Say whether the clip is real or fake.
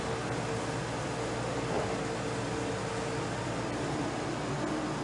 real